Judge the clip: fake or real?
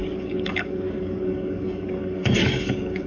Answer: fake